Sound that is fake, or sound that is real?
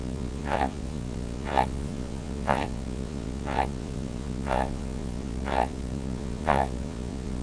fake